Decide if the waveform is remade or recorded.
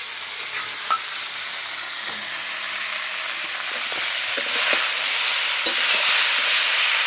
recorded